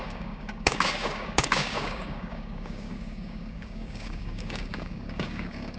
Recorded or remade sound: remade